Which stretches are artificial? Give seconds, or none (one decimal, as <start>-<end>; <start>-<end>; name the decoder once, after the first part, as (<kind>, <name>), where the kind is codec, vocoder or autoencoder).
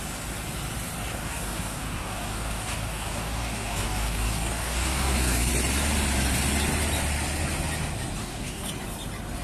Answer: 1.2-5.5 (codec, DAC); 8.2-8.7